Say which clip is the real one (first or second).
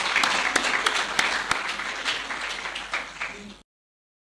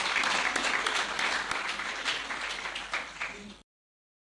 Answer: first